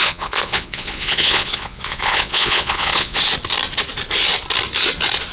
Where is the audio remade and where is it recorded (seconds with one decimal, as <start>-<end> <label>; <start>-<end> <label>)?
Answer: 0.0-3.2 remade; 3.2-5.3 recorded